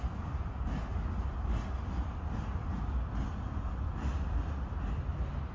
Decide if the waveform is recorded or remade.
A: recorded